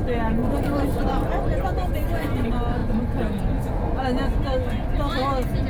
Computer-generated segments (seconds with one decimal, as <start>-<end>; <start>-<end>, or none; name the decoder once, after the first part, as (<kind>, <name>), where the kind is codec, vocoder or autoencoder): 0.4-1.3 (vocoder, BigVGAN v2); 2.8-3.4